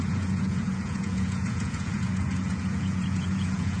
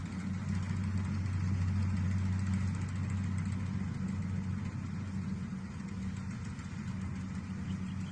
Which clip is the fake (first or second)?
first